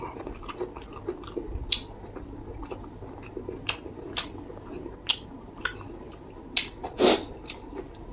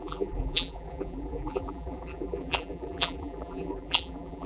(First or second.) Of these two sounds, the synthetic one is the second